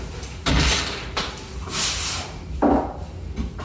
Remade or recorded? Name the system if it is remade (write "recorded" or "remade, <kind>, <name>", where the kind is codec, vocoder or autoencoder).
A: remade, vocoder, BigVGAN v2